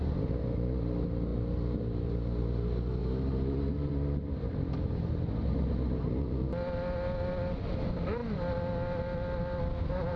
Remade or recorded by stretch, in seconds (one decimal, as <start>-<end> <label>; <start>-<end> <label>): 0.0-3.0 recorded; 3.0-3.9 remade; 3.9-10.2 recorded